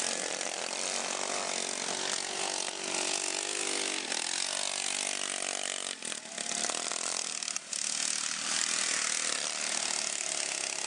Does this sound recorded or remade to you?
recorded